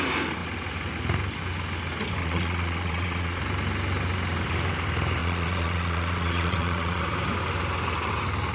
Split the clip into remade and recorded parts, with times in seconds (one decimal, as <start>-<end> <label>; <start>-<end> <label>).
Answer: 0.0-2.2 recorded; 2.2-3.4 remade; 3.4-5.2 recorded; 5.2-7.0 remade; 7.0-8.5 recorded